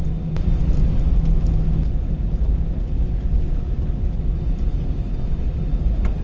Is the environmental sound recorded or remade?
recorded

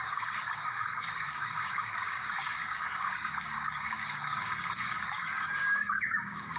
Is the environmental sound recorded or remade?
remade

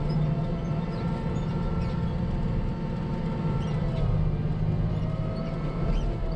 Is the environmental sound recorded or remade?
recorded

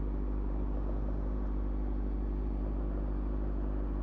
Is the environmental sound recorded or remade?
recorded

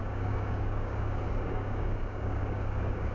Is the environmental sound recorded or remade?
remade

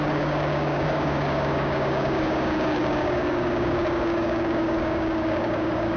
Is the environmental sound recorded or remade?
remade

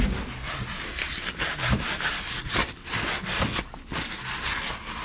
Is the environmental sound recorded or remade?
recorded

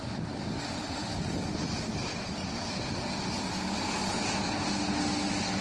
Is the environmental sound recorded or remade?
recorded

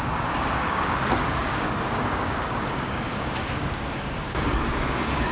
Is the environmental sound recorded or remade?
remade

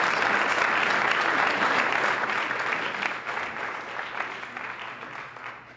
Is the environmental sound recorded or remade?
recorded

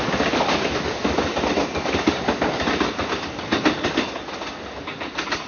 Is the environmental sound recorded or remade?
recorded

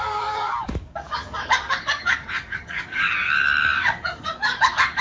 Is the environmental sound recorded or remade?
remade